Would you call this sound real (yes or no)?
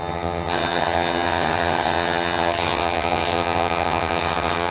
no